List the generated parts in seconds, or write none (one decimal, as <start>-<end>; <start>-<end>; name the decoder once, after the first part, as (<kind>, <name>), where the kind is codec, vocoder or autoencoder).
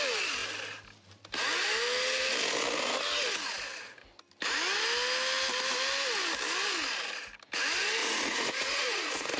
8.0-9.4 (vocoder, Vocos)